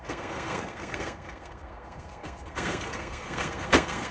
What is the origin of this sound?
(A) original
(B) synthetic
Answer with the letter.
B